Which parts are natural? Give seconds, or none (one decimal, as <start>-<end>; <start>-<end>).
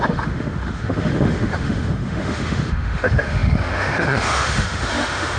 none